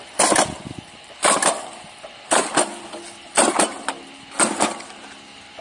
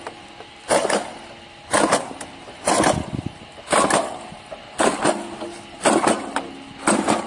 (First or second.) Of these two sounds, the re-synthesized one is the first